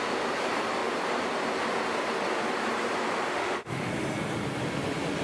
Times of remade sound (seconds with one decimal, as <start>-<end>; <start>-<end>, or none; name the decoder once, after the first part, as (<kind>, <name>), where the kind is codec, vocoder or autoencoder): 3.3-3.9 (autoencoder, DAC-VAE)